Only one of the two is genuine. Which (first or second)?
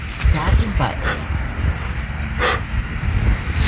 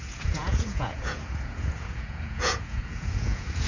first